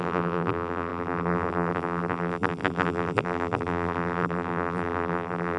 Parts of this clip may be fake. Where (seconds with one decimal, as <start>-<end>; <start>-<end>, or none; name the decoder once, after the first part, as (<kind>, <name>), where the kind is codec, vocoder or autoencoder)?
0.0-5.6 (vocoder, BigVGAN v2)